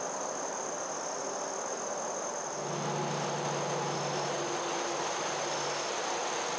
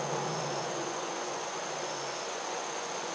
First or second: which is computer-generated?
second